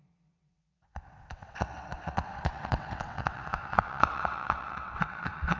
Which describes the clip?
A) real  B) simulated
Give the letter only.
B